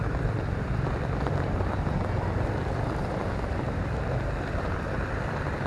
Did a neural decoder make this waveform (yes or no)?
yes